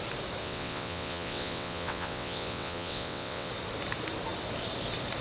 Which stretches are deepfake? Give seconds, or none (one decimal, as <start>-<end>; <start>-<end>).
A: 0.4-3.5